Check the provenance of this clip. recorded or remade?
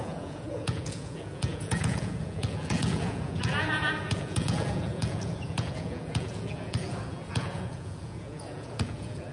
remade